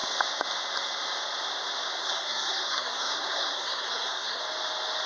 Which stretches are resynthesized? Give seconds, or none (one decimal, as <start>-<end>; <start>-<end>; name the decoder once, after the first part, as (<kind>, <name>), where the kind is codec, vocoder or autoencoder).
2.0-4.4 (codec, SNAC)